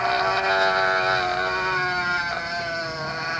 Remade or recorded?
recorded